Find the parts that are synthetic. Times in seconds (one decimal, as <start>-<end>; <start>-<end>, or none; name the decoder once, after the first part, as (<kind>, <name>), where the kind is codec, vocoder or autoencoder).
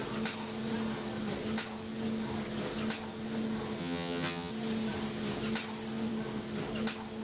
3.8-4.5 (vocoder, HiFi-GAN)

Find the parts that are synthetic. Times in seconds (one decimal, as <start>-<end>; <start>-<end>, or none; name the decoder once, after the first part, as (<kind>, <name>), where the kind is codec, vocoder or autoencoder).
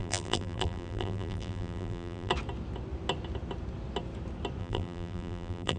0.0-2.3 (vocoder, BigVGAN v2); 4.6-5.8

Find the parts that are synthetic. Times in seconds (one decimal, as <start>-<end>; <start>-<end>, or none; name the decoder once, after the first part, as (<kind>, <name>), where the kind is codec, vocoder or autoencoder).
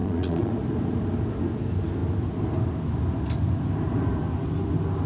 0.0-0.5 (vocoder, Vocos)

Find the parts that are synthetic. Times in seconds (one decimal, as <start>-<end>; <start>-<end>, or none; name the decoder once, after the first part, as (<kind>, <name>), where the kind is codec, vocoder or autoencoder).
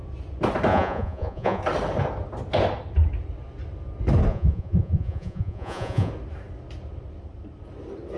0.7-1.6 (vocoder, Vocos); 4.3-6.1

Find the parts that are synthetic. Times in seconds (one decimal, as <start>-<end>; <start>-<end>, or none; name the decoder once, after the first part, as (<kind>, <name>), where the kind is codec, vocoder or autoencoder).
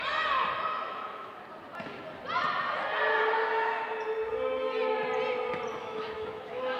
0.7-1.4 (autoencoder, DAC-VAE); 5.8-6.8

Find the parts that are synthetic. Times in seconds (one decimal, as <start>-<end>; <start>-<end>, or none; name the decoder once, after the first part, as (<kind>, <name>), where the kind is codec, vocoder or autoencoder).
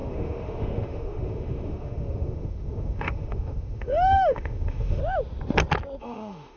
0.0-5.0 (autoencoder, DAC-VAE); 6.0-6.6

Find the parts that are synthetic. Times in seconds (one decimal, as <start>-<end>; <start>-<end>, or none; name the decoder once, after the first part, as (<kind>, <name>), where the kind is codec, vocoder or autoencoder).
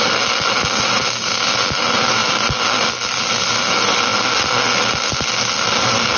none